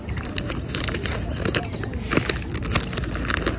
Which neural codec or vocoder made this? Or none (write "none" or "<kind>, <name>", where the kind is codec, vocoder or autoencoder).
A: none